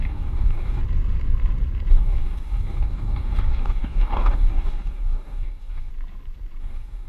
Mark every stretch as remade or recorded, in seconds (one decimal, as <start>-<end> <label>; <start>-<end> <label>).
0.0-0.8 remade; 0.8-1.9 recorded; 1.9-5.9 remade; 5.9-6.6 recorded; 6.6-7.1 remade